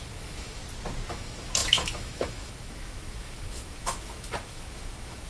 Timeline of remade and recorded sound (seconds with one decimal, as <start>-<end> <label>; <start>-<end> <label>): 0.0-0.6 remade; 0.6-1.1 recorded; 1.1-5.3 remade